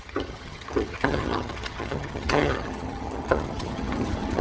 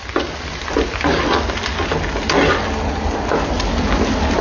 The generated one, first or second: first